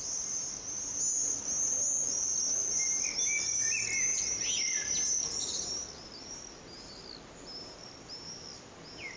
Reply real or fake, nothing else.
real